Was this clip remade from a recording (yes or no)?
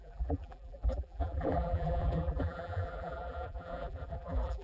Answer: yes